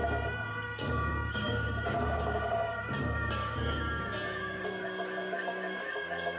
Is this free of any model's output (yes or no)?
no